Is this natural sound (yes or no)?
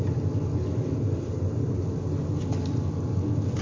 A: yes